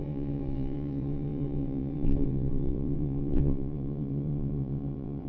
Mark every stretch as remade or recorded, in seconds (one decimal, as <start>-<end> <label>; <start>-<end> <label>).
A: 0.0-5.3 remade

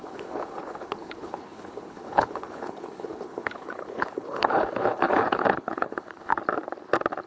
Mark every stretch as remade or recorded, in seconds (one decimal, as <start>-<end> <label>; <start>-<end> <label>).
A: 0.0-6.3 remade; 6.3-7.3 recorded

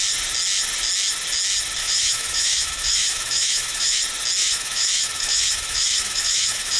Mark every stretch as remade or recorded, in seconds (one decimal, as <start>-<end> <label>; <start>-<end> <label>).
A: 0.0-1.8 recorded; 1.8-4.0 remade; 4.0-4.4 recorded; 4.4-6.8 remade

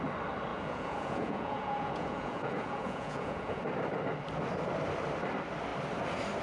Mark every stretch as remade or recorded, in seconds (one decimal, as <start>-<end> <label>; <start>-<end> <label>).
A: 0.0-0.5 recorded; 0.5-3.6 remade; 3.6-6.4 recorded

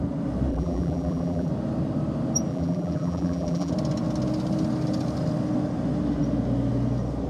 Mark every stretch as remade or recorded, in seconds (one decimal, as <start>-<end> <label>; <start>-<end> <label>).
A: 0.0-0.5 recorded; 0.5-1.5 remade; 1.5-2.5 recorded; 2.5-3.7 remade; 3.7-7.3 recorded

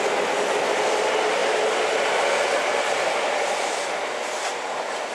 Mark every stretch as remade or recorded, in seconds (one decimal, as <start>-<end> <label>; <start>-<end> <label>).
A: 0.0-5.1 recorded